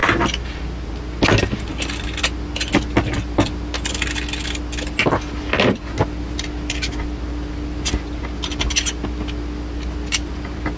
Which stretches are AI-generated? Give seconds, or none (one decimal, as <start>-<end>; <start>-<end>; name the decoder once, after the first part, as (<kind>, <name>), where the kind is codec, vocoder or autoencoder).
none